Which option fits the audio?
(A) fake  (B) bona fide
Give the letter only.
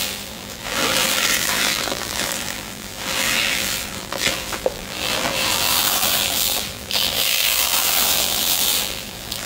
A